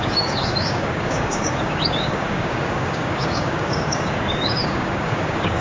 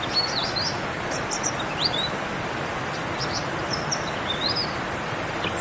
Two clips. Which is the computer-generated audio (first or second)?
first